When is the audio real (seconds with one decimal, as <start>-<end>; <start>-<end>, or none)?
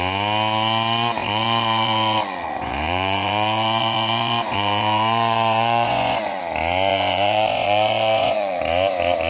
0.0-1.2; 6.4-6.9; 8.6-9.3